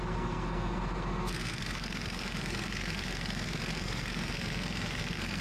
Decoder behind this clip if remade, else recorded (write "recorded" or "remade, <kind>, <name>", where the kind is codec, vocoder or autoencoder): remade, codec, SNAC